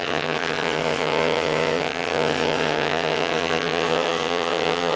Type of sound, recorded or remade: remade